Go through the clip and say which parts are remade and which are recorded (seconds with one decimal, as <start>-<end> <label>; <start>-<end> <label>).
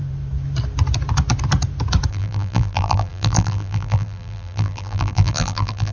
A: 0.0-2.1 recorded; 2.1-5.9 remade